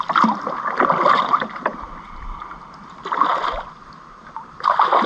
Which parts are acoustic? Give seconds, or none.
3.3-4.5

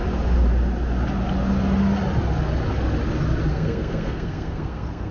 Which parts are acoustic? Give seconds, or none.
0.0-3.5

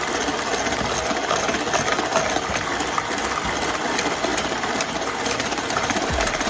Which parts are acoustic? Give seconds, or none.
0.0-4.3

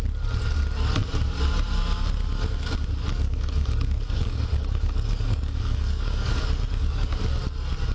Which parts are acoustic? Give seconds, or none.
0.0-3.3; 7.2-7.9

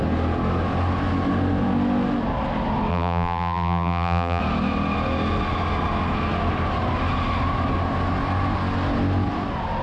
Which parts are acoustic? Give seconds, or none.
0.0-2.9; 4.4-9.8

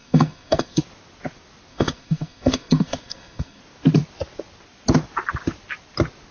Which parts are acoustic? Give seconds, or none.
0.8-1.7; 3.6-6.3

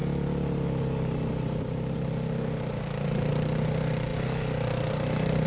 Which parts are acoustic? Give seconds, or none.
0.0-5.5

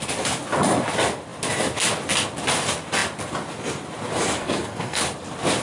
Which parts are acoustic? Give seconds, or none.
0.0-4.4; 5.0-5.6